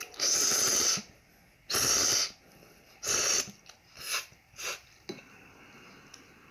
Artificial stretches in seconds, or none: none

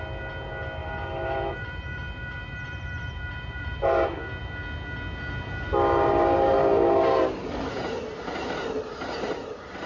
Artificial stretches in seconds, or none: 0.8-4.0 (vocoder, BigVGAN v2)

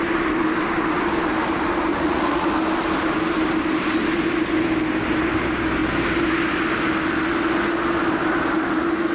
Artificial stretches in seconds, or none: 1.9-2.5 (vocoder, Vocos)

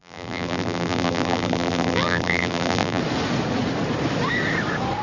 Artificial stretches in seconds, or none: 0.0-3.0 (vocoder, BigVGAN v2)

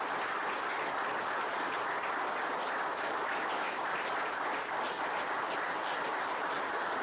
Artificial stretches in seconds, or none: 2.9-3.8 (autoencoder, DAC-VAE)

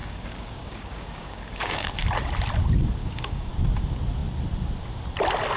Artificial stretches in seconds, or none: 0.0-1.9 (codec, DAC); 3.0-3.5

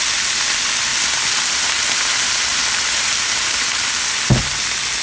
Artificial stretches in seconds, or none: 0.9-3.9 (vocoder, BigVGAN v2)

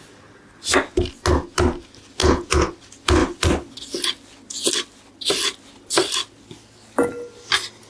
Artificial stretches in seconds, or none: 2.2-2.7 (vocoder, Vocos)